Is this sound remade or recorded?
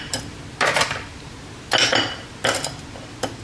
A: recorded